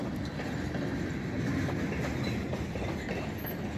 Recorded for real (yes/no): yes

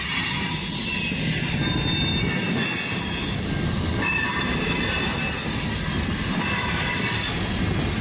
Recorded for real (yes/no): yes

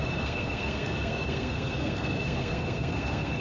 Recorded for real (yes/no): no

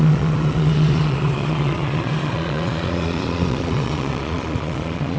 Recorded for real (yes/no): no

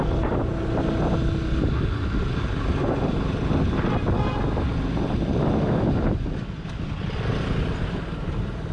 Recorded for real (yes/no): yes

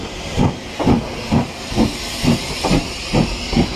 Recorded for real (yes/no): yes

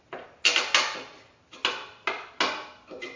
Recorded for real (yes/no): yes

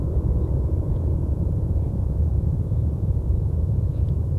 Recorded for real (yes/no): no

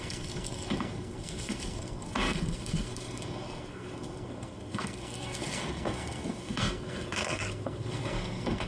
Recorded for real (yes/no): no